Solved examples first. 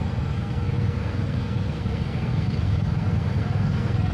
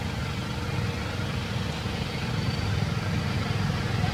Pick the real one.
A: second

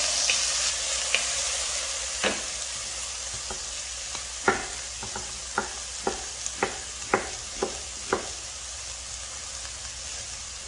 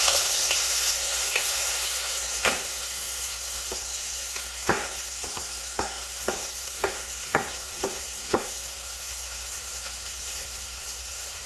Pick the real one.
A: first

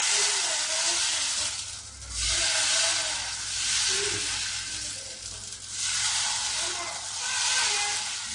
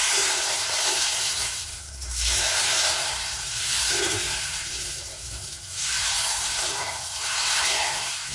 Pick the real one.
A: first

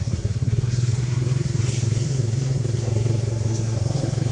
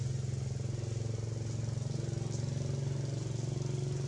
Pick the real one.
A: second